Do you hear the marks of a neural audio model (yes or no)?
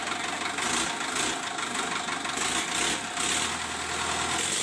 no